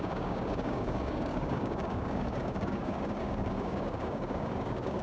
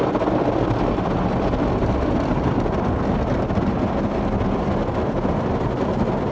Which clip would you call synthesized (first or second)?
first